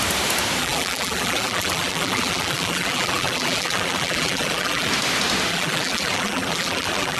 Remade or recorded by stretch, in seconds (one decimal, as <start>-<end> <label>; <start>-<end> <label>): 0.0-0.6 recorded; 0.6-4.9 remade; 4.9-5.5 recorded; 5.5-7.2 remade